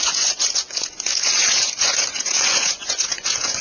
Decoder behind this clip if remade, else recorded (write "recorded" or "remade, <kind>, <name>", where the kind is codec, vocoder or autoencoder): remade, vocoder, Vocos